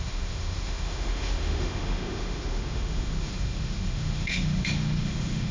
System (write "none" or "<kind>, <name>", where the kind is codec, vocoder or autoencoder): autoencoder, DAC-VAE